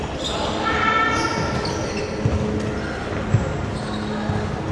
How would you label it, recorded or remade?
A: recorded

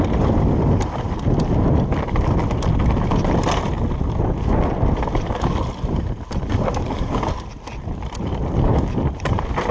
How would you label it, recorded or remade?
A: recorded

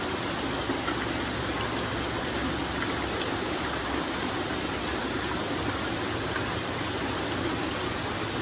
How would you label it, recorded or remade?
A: recorded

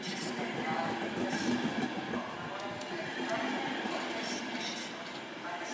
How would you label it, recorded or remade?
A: recorded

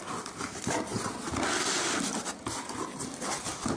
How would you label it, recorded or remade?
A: recorded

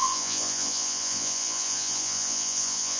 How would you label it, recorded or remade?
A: remade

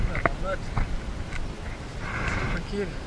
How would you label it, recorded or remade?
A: recorded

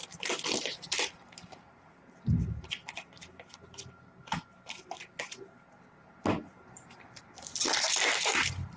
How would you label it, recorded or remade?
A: recorded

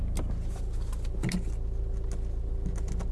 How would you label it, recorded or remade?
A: recorded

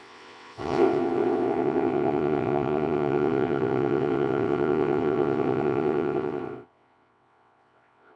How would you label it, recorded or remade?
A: remade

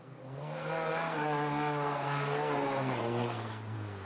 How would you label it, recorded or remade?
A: remade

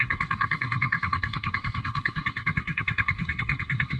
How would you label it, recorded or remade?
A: remade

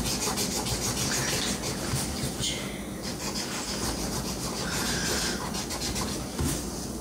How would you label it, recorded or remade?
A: recorded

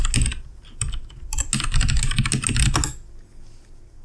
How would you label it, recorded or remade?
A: recorded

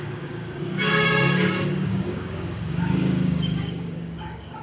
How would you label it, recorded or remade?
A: remade